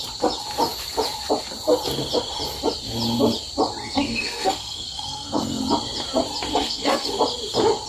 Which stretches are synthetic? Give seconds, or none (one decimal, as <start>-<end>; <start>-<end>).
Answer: 3.8-5.6; 6.5-7.1